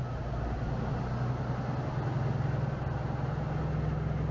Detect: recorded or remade recorded